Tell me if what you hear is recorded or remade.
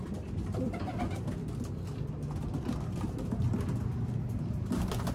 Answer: recorded